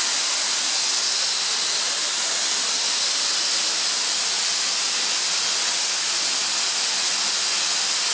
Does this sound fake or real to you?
real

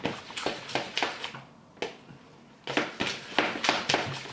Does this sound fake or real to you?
real